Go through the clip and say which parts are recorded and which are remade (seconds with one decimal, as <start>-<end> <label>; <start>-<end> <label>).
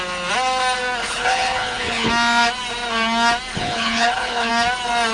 0.0-1.0 recorded; 1.0-2.1 remade; 2.1-3.5 recorded; 3.5-4.5 remade; 4.5-5.1 recorded